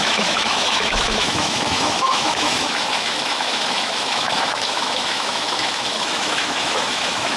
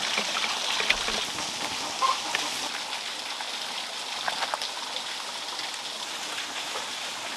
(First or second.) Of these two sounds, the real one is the second